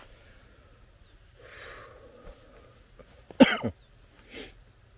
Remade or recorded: recorded